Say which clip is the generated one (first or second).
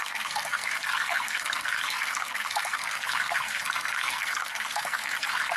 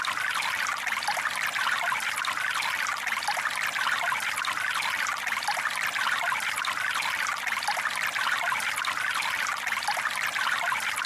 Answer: first